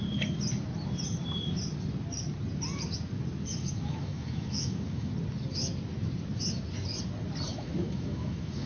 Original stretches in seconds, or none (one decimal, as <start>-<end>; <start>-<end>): 0.0-3.5; 5.1-7.5